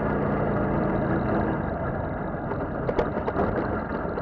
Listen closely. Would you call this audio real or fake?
real